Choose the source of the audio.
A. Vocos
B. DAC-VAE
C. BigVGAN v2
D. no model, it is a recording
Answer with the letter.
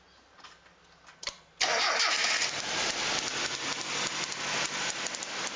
D